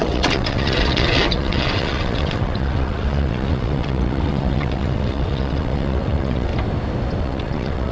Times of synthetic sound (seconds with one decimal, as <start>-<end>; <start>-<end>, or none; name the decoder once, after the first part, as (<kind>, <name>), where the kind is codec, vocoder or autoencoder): 0.0-6.5 (vocoder, WaveNeXt); 7.2-7.9